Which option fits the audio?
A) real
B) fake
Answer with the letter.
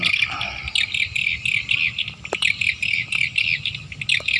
A